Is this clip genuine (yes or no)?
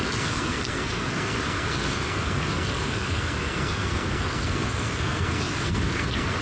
no